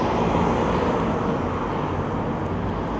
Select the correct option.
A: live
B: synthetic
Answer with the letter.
A